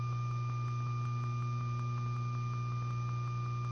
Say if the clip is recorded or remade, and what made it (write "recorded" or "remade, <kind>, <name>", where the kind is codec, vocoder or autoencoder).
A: recorded